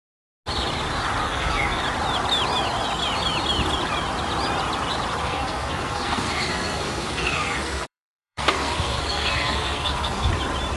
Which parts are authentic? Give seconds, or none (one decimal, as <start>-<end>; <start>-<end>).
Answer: 0.0-1.2; 1.8-5.2; 10.3-10.8